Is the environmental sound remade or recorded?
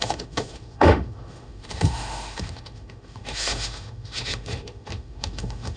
remade